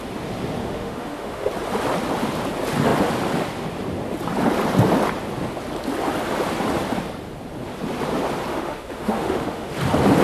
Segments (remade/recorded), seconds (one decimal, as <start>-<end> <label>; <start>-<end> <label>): 0.0-0.6 recorded; 0.6-1.5 remade; 1.5-8.5 recorded; 8.5-9.7 remade; 9.7-10.2 recorded